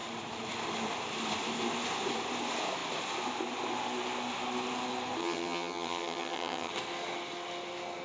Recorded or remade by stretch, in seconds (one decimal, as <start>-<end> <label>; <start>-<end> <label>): 0.0-5.2 recorded; 5.2-6.7 remade; 6.7-8.0 recorded